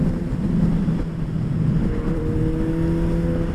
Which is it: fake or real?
real